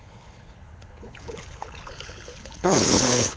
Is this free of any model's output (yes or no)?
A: no